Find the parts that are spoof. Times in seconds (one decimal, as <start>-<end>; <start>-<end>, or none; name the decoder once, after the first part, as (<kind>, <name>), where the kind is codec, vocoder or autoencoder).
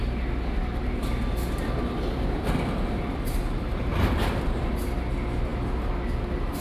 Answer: 0.8-4.8 (vocoder, BigVGAN v2)